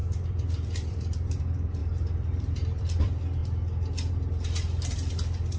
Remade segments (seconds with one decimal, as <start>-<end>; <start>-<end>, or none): 0.0-1.4; 1.8-3.0